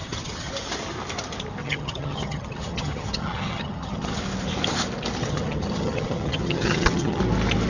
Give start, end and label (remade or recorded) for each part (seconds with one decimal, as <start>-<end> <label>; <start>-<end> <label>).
0.0-0.5 remade; 0.5-1.6 recorded; 1.6-4.2 remade; 4.2-5.2 recorded; 5.2-7.2 remade; 7.2-7.7 recorded